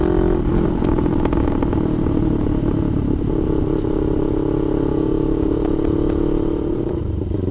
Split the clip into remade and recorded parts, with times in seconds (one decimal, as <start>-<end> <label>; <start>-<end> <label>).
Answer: 0.0-4.9 recorded; 4.9-5.6 remade; 5.6-7.5 recorded

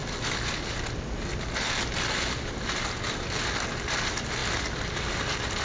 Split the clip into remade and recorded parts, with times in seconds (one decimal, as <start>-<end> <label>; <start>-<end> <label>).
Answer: 0.0-5.6 recorded